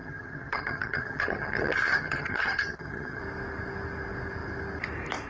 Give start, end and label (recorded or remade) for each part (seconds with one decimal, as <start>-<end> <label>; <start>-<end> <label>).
0.0-3.2 remade; 3.2-5.3 recorded